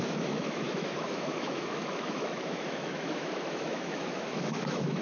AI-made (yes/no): yes